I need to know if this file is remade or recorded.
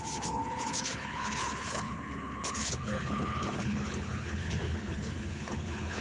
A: remade